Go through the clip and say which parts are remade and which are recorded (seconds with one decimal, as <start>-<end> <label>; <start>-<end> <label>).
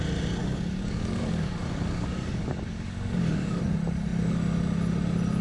0.0-0.4 recorded; 0.4-3.6 remade; 3.6-5.4 recorded